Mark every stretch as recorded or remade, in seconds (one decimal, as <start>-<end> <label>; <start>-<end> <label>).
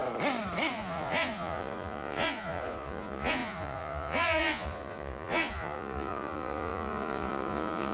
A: 0.0-0.7 recorded; 0.7-7.9 remade